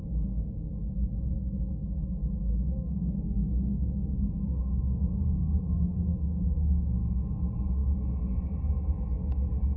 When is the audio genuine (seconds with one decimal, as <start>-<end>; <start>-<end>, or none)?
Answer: 0.0-2.5; 7.3-9.8